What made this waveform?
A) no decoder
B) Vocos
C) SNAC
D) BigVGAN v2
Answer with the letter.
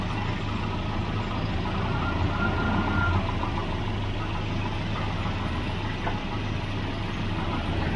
A